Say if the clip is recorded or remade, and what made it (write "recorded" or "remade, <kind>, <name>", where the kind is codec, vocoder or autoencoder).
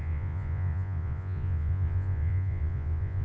remade, vocoder, Vocos